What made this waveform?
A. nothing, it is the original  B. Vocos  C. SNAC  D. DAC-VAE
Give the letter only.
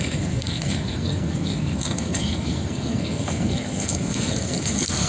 C